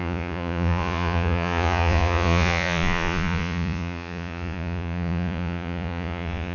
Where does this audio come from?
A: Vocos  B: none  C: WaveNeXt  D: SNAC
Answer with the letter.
A